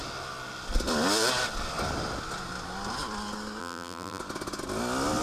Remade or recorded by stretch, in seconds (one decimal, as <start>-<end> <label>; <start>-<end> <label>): 0.0-3.6 recorded; 3.6-4.2 remade; 4.2-5.2 recorded